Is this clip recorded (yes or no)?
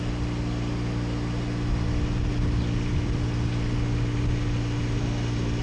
yes